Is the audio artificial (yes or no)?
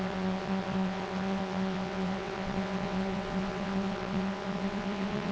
yes